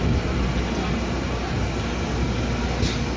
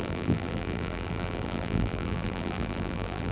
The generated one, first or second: second